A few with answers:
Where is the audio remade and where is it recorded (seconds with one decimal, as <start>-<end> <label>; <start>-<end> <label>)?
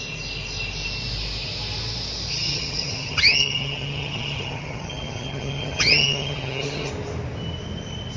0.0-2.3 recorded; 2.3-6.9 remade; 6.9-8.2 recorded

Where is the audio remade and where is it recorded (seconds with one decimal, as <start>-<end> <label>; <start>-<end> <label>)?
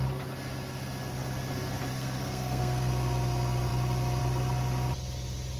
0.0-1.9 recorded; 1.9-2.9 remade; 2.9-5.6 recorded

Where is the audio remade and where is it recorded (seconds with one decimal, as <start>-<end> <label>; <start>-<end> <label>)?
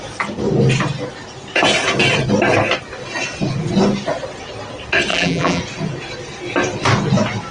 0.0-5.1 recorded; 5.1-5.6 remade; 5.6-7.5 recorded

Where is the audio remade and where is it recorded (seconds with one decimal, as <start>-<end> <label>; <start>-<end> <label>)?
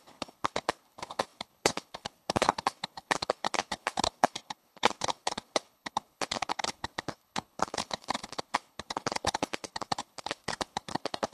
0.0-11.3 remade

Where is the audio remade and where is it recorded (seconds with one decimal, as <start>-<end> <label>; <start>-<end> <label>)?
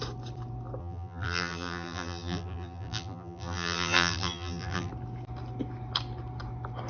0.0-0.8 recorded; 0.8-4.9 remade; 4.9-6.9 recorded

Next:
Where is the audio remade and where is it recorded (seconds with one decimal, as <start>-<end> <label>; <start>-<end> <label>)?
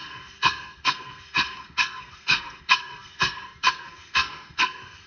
0.0-5.1 remade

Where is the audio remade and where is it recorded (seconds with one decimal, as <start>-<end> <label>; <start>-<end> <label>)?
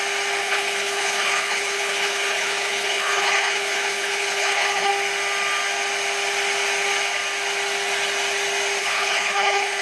0.0-0.4 recorded; 0.4-4.9 remade; 4.9-8.8 recorded; 8.8-9.8 remade